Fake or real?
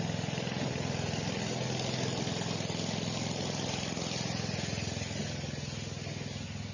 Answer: real